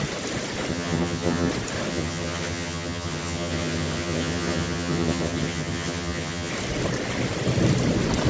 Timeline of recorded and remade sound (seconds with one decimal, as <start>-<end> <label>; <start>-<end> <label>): 0.0-0.7 recorded; 0.7-1.5 remade; 1.5-1.9 recorded; 1.9-6.5 remade; 6.5-8.3 recorded